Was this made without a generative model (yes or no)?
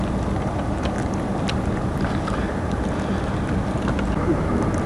yes